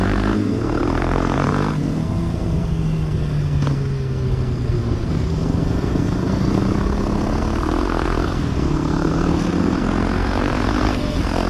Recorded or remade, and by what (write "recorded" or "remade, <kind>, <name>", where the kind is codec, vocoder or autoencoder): remade, codec, SNAC